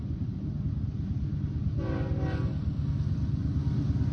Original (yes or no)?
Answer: yes